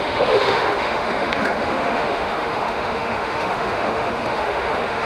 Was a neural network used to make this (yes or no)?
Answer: yes